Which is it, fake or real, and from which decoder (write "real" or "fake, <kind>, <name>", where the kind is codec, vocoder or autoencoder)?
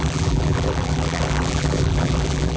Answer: fake, vocoder, BigVGAN v2